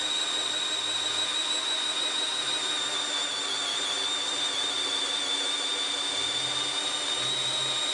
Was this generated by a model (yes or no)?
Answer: no